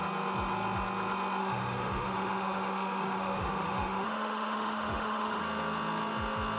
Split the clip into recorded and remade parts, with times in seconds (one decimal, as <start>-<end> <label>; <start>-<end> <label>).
0.0-1.4 recorded; 1.4-5.4 remade; 5.4-6.6 recorded